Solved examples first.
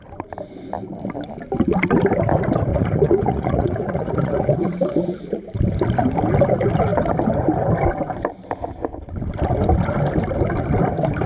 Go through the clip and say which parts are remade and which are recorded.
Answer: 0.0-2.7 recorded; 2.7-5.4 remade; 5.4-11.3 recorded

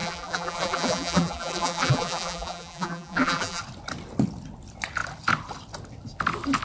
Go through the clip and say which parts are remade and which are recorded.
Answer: 0.0-3.6 remade; 3.6-6.6 recorded

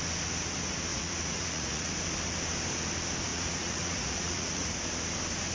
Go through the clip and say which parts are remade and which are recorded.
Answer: 0.0-0.9 recorded; 0.9-1.9 remade; 1.9-3.3 recorded; 3.3-4.8 remade; 4.8-5.5 recorded

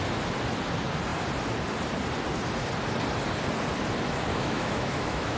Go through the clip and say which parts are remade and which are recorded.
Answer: 0.0-4.3 recorded; 4.3-5.4 remade

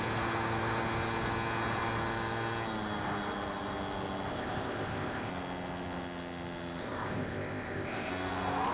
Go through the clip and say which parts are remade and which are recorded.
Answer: 0.0-4.3 recorded; 4.3-5.3 remade; 5.3-6.8 recorded; 6.8-8.1 remade; 8.1-8.7 recorded

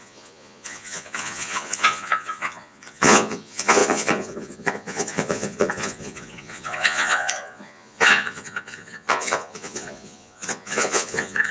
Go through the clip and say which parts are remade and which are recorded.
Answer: 0.0-11.5 remade

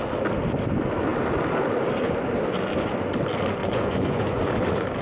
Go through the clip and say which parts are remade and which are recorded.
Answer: 0.0-3.6 recorded; 3.6-4.5 remade; 4.5-5.0 recorded

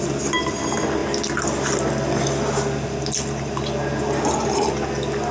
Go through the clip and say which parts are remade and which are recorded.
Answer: 0.0-5.3 recorded